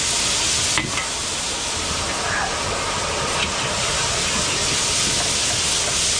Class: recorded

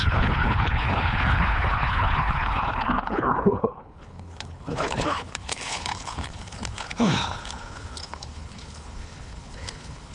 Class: remade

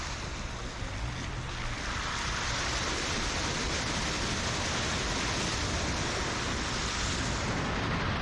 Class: recorded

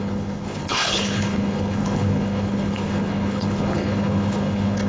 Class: remade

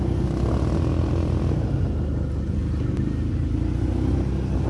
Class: recorded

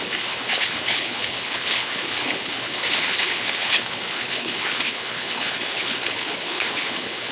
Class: remade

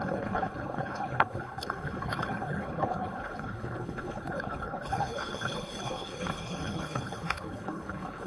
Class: remade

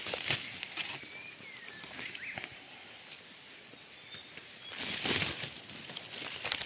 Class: recorded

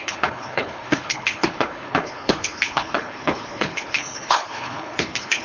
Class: remade